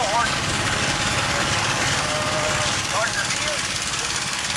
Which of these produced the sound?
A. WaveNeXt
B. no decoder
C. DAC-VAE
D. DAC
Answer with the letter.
D